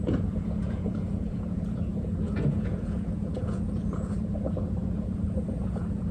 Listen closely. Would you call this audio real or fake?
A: fake